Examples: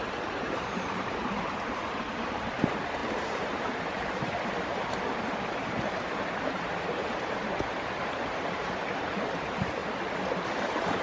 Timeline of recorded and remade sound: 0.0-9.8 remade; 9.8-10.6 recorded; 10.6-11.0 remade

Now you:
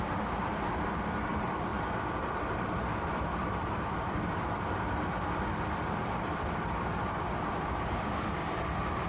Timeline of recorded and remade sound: 0.0-1.7 recorded; 1.7-4.5 remade; 4.5-8.4 recorded; 8.4-9.1 remade

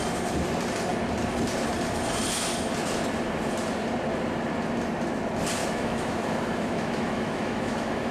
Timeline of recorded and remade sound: 0.0-5.6 recorded; 5.6-8.1 remade

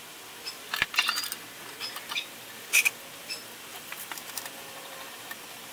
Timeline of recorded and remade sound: 0.0-3.7 recorded; 3.7-5.7 remade

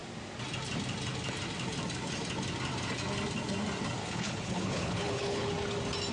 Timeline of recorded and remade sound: 0.0-4.0 recorded; 4.0-5.5 remade; 5.5-6.1 recorded

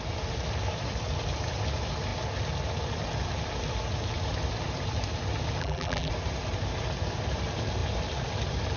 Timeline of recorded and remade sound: 0.0-5.6 recorded; 5.6-6.1 remade; 6.1-8.8 recorded